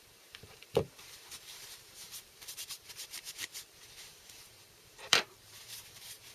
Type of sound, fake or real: fake